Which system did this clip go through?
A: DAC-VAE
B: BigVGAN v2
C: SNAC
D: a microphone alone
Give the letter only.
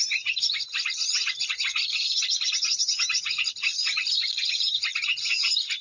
D